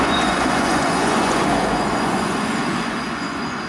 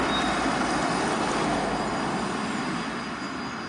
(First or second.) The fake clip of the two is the first